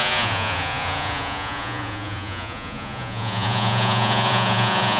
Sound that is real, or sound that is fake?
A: fake